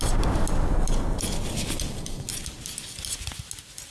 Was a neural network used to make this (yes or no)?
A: no